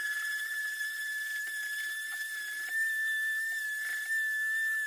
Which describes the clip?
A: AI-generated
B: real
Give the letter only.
B